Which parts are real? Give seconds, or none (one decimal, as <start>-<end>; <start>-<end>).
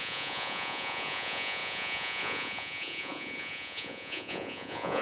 none